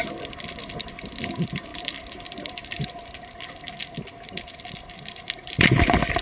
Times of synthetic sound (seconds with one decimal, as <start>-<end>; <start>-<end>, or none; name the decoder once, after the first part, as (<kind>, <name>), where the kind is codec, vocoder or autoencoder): 1.7-2.8 (vocoder, BigVGAN v2)